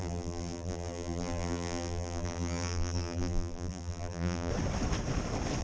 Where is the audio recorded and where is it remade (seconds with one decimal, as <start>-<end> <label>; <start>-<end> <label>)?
0.0-4.5 remade; 4.5-5.6 recorded